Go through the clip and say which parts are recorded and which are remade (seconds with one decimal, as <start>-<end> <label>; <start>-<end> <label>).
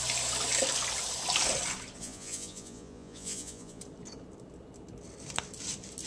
0.0-2.0 recorded; 2.0-3.8 remade; 3.8-6.1 recorded